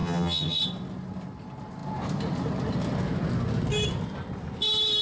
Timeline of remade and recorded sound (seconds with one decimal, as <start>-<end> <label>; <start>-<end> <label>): 0.0-0.6 remade; 0.6-5.0 recorded